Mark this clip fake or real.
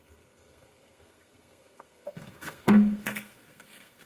fake